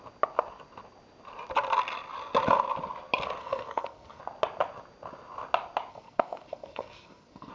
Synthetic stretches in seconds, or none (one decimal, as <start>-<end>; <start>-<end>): 3.4-4.2; 5.9-7.5